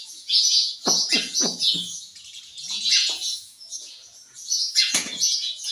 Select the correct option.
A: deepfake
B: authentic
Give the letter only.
A